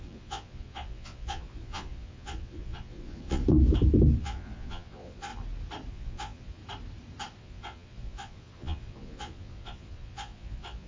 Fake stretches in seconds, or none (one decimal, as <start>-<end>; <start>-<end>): 0.0-3.4; 4.2-5.3; 5.9-6.6; 7.4-10.9